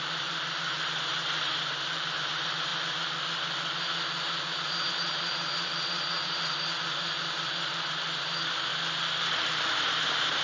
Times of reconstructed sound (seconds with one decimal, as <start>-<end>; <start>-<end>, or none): 0.0-2.7; 4.9-8.7; 9.2-10.4